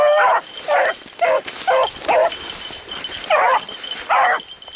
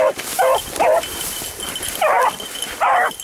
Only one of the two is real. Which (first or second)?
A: first